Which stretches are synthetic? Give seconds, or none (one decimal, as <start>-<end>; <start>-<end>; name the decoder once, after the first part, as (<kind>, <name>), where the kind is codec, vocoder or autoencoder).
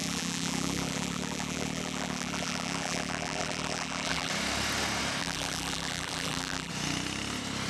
0.0-4.3 (vocoder, BigVGAN v2); 5.2-6.7